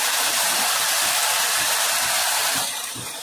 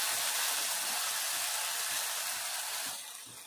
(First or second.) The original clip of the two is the second